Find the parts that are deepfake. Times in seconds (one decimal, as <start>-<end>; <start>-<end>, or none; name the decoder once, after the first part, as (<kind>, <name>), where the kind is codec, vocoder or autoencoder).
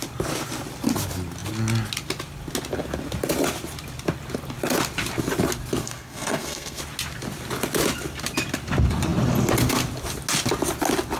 5.8-6.8 (codec, SNAC)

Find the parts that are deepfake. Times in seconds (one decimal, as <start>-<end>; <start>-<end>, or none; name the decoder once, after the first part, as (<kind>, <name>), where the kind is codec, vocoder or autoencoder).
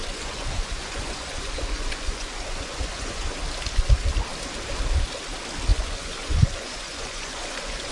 0.0-3.3 (vocoder, Vocos); 5.7-7.9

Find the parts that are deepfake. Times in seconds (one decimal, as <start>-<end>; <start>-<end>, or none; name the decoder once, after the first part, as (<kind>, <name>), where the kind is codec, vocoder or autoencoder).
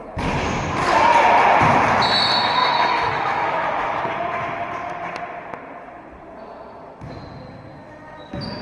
2.6-4.0 (autoencoder, DAC-VAE)